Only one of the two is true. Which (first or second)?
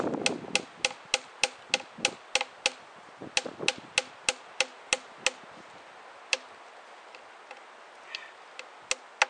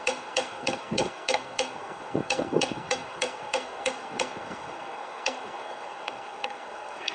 first